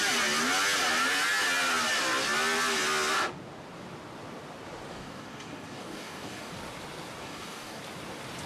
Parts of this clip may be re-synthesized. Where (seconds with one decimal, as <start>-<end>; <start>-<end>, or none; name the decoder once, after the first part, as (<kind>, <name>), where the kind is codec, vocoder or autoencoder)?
4.9-6.5 (codec, DAC); 7.2-7.8